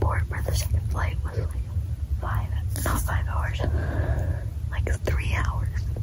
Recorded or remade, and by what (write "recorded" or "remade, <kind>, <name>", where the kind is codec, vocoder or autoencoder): recorded